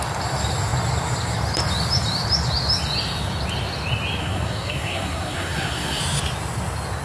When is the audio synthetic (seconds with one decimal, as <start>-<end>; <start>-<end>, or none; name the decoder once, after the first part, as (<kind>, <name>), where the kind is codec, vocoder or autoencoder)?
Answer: 4.2-6.0 (codec, SNAC)